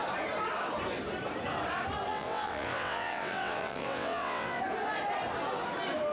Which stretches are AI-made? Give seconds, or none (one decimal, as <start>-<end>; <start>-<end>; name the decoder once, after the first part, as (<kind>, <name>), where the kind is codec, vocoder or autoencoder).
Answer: 2.1-4.6 (vocoder, WaveNeXt)